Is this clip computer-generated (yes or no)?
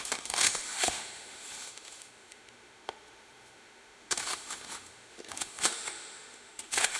yes